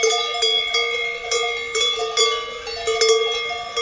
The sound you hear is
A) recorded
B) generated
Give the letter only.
A